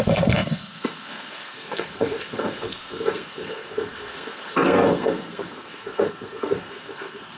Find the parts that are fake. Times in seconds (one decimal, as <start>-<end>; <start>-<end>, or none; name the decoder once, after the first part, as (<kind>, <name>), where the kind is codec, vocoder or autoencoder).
0.0-7.4 (codec, SNAC)